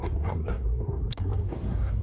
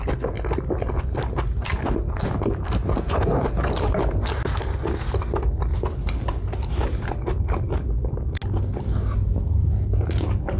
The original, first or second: second